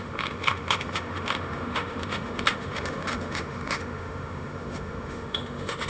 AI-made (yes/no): yes